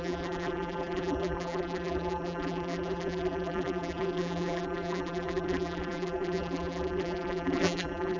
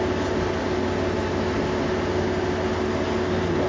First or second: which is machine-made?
first